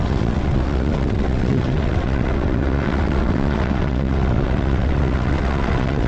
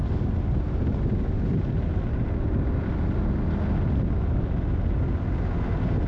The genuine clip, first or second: second